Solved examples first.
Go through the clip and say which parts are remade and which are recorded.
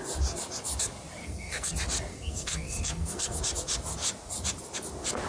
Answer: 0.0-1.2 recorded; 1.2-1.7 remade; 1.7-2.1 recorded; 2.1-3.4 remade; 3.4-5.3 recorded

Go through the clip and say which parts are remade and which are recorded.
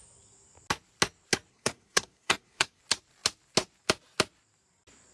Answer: 0.0-1.5 recorded; 1.5-2.8 remade; 2.8-5.1 recorded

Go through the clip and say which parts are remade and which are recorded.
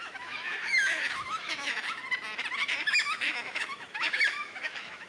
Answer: 0.0-2.0 remade; 2.0-2.8 recorded; 2.8-5.1 remade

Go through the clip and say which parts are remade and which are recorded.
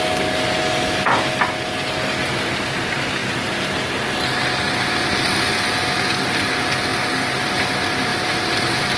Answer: 0.0-9.0 recorded